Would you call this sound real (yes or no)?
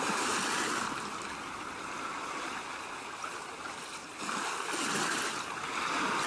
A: yes